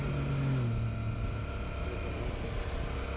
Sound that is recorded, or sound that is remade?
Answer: recorded